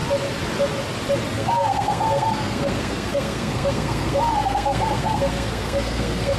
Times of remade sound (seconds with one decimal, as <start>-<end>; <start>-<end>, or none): 1.3-6.4